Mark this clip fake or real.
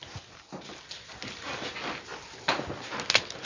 real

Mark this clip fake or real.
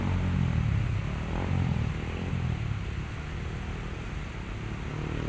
real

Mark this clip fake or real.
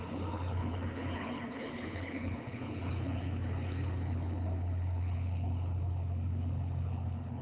fake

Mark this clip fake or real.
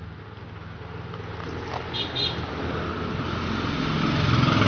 real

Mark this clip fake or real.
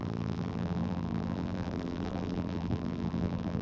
fake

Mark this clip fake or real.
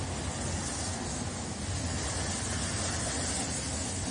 real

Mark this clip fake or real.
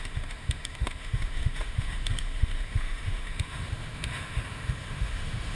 fake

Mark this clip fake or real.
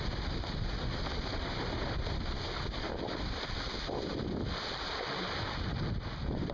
real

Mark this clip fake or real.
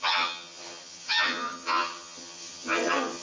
fake